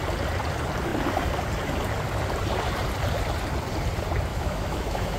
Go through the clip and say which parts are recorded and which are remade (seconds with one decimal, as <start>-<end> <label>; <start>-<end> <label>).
0.0-4.3 recorded; 4.3-5.2 remade